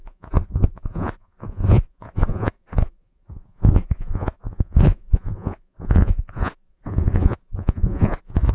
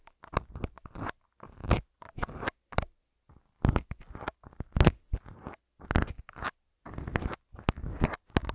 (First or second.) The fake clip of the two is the first